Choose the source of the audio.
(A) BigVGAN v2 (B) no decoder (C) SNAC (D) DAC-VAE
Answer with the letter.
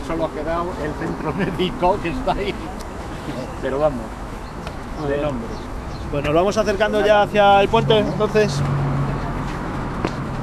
D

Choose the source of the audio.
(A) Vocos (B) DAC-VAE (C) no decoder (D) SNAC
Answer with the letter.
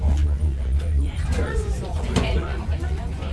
A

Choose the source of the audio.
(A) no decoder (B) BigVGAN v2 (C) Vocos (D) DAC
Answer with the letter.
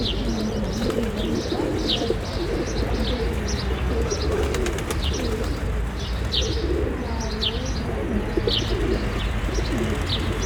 A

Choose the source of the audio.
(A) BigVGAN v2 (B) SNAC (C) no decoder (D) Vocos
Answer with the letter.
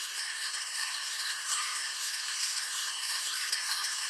B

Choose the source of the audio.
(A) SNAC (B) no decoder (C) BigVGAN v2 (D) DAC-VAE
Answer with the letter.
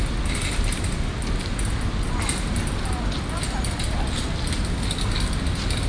B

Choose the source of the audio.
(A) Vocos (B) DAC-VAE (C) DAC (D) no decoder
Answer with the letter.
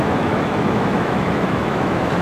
B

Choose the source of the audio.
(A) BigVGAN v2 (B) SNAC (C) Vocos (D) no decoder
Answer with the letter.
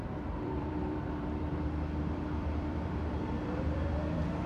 A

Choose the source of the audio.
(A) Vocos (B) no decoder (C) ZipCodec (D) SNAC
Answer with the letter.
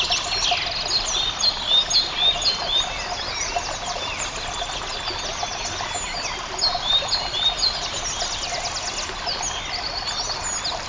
B